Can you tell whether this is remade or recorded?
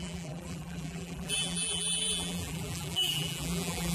remade